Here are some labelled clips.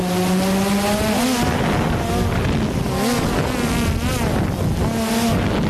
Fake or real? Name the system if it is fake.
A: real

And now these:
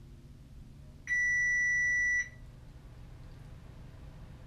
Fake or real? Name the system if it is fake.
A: real